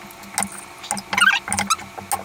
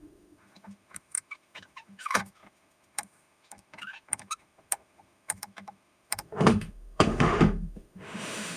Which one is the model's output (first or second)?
second